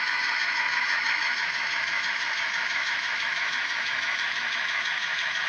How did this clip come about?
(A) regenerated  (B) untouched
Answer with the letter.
A